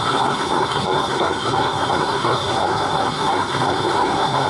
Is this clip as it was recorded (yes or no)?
no